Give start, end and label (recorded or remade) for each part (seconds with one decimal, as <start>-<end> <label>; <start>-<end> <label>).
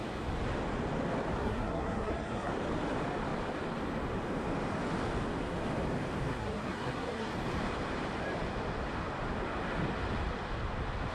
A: 0.0-1.4 recorded; 1.4-2.5 remade; 2.5-6.3 recorded; 6.3-7.3 remade; 7.3-11.1 recorded